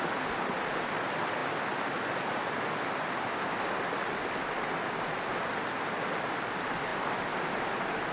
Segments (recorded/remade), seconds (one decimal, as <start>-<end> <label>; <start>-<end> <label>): 0.0-8.1 recorded